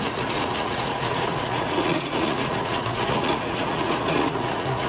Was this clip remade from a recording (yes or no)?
yes